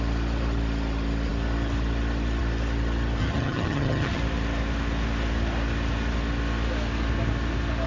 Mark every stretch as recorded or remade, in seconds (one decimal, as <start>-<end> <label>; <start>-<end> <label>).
0.0-3.2 recorded; 3.2-4.2 remade; 4.2-7.9 recorded